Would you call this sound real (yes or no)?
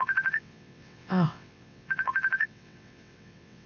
no